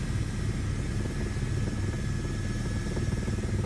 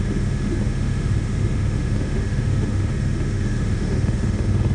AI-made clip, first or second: second